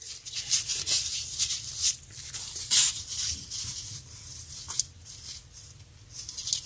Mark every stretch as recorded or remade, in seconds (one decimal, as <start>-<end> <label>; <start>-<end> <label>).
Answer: 0.0-6.7 recorded